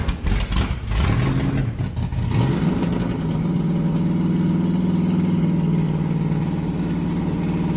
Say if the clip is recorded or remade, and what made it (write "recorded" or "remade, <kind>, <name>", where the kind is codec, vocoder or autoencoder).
recorded